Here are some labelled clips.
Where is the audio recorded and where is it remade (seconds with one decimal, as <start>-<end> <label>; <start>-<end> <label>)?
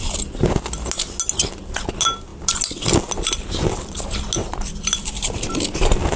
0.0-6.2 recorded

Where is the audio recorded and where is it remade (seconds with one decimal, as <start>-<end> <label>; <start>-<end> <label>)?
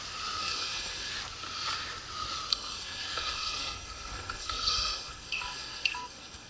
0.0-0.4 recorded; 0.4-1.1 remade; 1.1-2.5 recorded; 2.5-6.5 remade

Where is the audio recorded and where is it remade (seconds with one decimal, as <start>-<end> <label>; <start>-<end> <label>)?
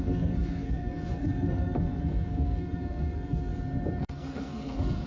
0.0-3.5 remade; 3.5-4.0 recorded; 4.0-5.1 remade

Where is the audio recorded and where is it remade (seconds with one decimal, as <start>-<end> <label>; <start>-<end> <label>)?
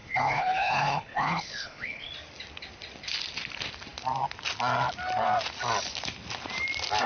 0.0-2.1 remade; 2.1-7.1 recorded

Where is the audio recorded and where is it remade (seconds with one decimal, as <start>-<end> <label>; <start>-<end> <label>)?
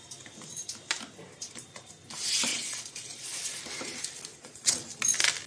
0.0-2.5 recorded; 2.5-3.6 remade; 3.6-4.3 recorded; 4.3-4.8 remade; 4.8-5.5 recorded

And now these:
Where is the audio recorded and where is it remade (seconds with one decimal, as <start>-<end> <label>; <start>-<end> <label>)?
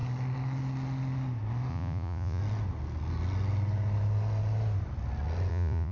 0.0-1.7 recorded; 1.7-2.4 remade; 2.4-5.5 recorded; 5.5-5.9 remade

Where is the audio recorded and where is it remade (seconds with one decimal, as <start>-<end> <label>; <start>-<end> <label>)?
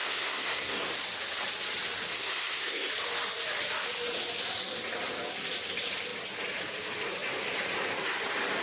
0.0-0.9 remade; 0.9-2.1 recorded; 2.1-2.9 remade; 2.9-8.6 recorded